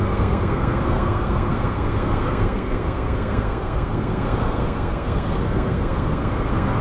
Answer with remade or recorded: remade